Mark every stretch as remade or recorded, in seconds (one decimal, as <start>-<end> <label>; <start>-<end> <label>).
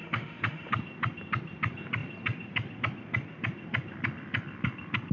0.0-0.7 remade; 0.7-5.1 recorded